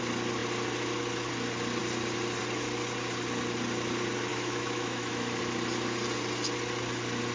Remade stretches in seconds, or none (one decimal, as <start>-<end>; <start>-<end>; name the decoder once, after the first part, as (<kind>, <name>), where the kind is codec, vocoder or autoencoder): 4.3-5.4 (autoencoder, DAC-VAE)